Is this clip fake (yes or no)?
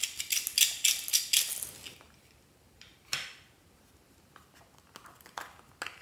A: no